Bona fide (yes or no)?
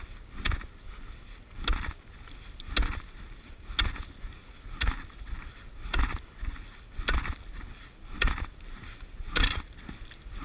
yes